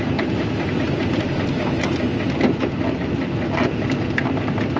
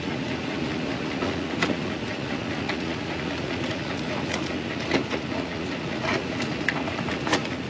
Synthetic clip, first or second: second